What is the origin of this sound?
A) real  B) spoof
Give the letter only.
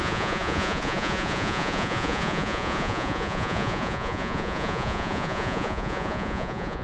B